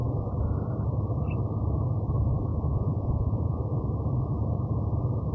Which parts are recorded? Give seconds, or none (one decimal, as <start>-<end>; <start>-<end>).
0.0-2.5; 3.6-5.3